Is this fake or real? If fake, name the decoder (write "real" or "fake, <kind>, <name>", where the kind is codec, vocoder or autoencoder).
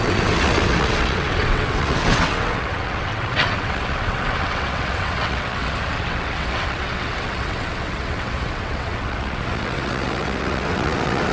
fake, vocoder, WaveNeXt